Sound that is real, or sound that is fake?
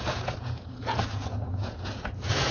fake